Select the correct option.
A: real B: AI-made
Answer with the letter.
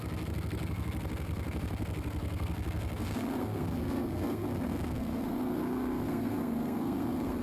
B